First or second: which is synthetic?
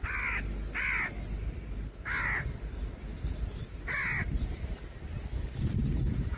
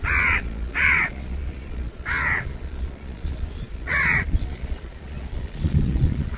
second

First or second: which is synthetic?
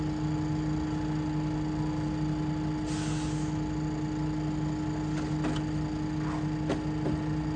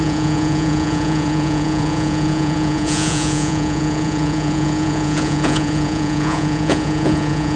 second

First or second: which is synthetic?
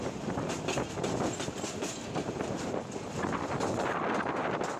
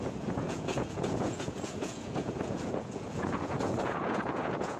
second